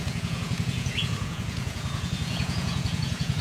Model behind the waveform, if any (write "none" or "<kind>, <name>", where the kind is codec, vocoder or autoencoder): vocoder, Vocos